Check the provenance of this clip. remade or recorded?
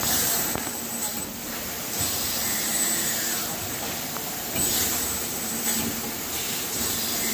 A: remade